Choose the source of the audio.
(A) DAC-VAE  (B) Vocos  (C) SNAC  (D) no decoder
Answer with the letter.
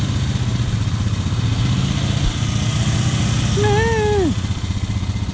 D